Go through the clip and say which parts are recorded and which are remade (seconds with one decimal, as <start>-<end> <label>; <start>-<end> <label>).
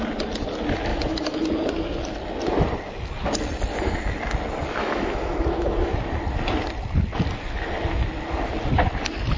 0.0-0.9 recorded; 0.9-1.4 remade; 1.4-4.8 recorded; 4.8-5.9 remade; 5.9-9.4 recorded